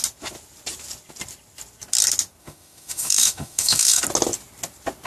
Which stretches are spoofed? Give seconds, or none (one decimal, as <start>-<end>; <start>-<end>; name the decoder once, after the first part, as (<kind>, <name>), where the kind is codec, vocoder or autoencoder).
2.4-4.0 (autoencoder, DAC-VAE)